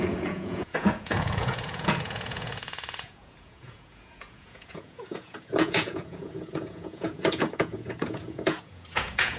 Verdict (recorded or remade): remade